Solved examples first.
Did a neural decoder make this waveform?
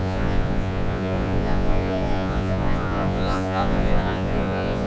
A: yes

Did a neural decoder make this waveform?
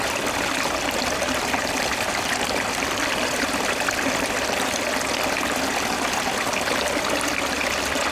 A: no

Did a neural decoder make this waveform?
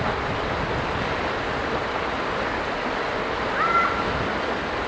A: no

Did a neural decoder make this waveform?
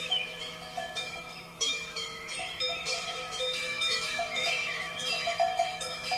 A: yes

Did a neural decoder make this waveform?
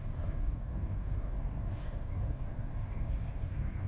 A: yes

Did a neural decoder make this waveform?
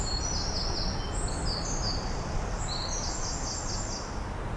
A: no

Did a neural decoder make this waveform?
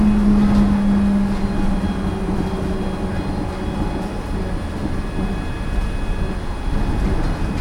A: no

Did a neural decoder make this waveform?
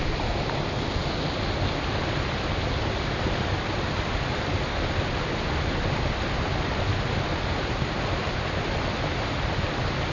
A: no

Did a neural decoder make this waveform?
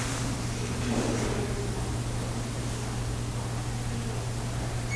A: no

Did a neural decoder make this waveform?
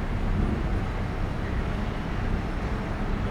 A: no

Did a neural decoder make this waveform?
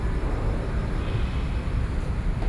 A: no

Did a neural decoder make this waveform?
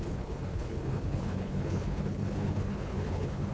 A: yes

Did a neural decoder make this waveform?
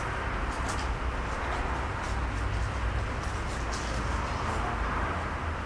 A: no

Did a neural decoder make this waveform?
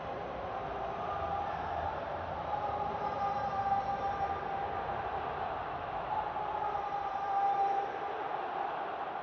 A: yes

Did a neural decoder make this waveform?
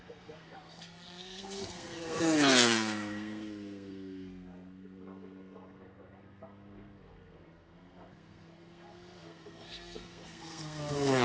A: yes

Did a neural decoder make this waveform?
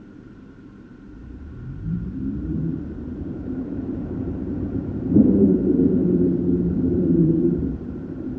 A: yes